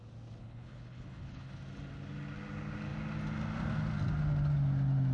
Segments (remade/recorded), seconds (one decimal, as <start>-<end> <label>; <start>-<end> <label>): 0.0-0.4 recorded; 0.4-1.6 remade; 1.6-5.1 recorded